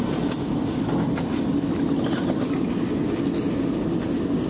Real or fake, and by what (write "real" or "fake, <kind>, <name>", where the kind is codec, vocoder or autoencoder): real